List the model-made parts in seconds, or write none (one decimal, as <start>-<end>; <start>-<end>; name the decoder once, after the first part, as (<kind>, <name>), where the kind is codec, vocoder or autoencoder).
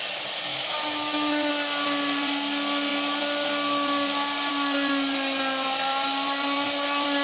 0.5-1.5 (autoencoder, DAC-VAE)